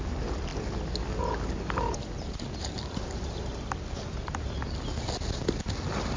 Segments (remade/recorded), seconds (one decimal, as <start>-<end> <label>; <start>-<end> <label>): 0.0-6.2 recorded